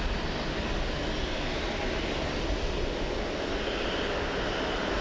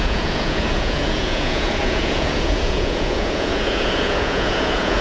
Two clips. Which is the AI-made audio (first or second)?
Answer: second